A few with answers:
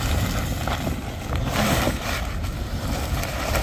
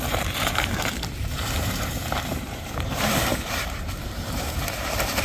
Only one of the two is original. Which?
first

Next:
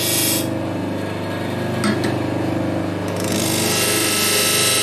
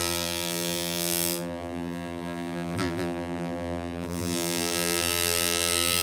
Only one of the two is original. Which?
first